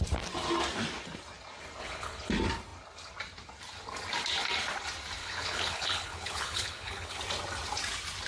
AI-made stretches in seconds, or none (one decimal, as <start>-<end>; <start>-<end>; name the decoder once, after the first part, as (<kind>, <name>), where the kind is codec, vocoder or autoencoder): 1.8-2.3 (codec, HILCodec); 5.2-7.2